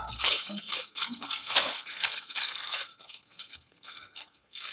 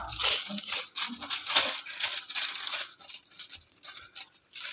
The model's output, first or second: first